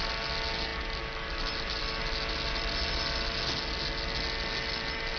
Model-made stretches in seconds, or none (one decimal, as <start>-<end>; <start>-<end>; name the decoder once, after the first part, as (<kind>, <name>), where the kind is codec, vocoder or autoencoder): none